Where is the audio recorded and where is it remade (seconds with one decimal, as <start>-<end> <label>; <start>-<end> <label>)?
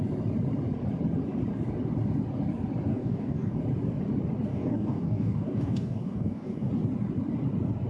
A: 0.0-2.9 recorded; 2.9-3.6 remade; 3.6-4.5 recorded; 4.5-6.7 remade; 6.7-7.9 recorded